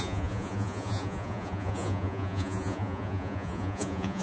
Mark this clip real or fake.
fake